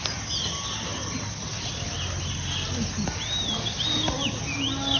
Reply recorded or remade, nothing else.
recorded